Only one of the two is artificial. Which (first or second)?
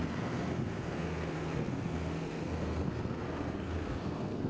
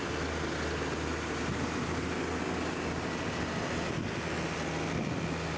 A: first